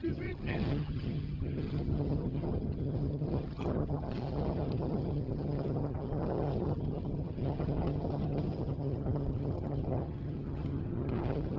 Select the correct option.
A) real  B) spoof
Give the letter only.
B